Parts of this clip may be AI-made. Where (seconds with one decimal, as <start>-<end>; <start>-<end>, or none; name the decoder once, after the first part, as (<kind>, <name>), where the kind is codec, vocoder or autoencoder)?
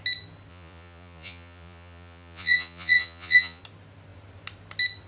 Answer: 0.5-3.6 (vocoder, Vocos)